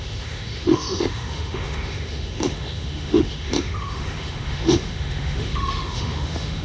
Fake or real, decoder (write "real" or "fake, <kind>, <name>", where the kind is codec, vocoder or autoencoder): fake, autoencoder, DAC-VAE